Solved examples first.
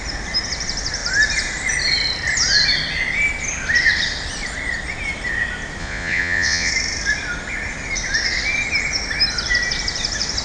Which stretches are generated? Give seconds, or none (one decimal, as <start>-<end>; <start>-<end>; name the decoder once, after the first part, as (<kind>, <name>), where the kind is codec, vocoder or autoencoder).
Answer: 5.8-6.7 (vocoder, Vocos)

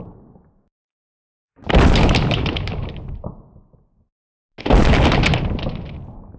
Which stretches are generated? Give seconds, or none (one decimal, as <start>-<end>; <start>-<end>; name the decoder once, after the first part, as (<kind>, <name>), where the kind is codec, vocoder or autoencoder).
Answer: none

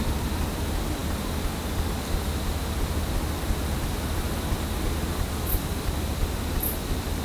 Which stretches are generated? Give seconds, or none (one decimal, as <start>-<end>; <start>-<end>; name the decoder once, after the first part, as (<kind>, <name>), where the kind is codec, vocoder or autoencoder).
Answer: none

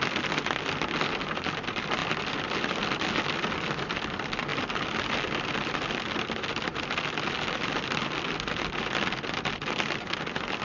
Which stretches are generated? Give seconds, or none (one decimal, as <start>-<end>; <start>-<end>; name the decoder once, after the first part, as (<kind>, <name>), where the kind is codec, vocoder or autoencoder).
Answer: none

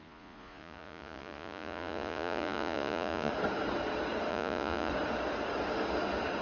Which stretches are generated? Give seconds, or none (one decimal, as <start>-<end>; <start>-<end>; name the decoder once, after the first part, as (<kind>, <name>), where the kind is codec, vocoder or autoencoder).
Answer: 0.0-3.3 (vocoder, Vocos); 4.3-4.9

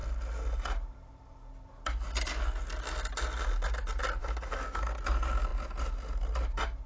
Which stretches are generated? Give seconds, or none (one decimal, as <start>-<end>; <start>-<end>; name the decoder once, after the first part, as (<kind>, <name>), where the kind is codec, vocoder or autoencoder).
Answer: 4.2-4.8 (codec, SNAC)